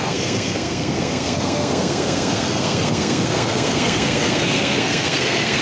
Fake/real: fake